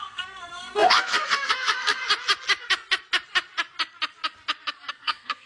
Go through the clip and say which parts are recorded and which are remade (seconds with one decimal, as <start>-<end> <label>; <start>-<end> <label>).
0.0-2.0 remade; 2.0-4.9 recorded; 4.9-5.5 remade